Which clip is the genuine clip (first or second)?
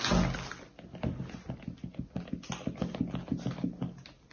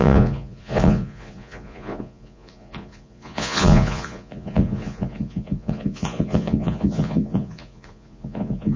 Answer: first